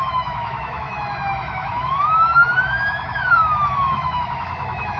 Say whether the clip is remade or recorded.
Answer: remade